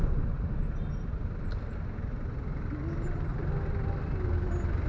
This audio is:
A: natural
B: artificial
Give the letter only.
A